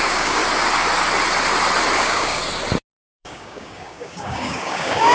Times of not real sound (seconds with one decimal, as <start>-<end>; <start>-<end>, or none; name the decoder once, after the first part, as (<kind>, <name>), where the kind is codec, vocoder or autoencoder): 0.0-0.4 (codec, DAC); 2.0-2.4; 2.9-5.1